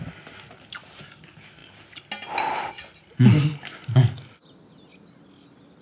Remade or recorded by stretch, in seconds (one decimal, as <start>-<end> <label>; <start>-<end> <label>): 0.0-5.8 recorded